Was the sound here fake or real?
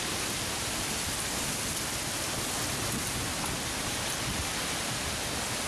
real